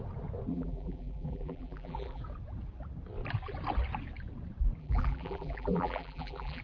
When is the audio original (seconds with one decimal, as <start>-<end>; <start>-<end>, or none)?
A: 0.0-0.5; 2.2-4.8

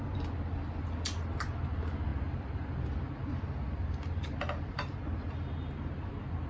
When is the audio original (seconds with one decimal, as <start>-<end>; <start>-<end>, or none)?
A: 0.0-6.5